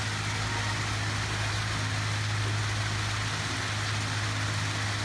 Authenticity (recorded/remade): recorded